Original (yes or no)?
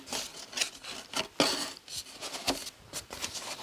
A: yes